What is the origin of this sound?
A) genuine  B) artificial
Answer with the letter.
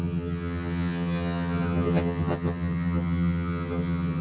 B